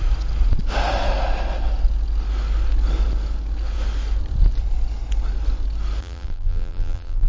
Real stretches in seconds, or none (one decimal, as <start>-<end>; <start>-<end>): 0.0-6.0